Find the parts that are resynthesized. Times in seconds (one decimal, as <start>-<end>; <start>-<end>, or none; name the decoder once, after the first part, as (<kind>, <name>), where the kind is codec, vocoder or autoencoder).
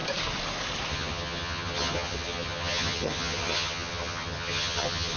0.9-5.2 (vocoder, HiFi-GAN)